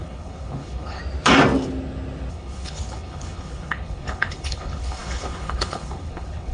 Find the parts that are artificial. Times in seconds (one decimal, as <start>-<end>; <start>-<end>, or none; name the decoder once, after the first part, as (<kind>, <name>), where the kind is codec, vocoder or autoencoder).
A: 0.0-1.0 (codec, HILCodec); 2.3-6.5